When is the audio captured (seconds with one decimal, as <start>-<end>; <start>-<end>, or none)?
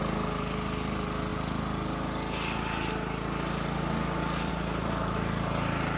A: 0.0-6.0